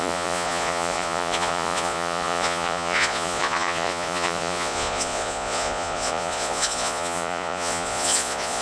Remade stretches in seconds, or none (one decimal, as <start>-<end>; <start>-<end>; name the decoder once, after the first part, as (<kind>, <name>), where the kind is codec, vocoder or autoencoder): 0.0-8.6 (vocoder, Vocos)